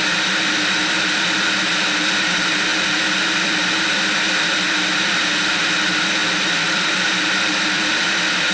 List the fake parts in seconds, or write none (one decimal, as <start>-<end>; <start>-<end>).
0.0-2.7; 3.4-8.5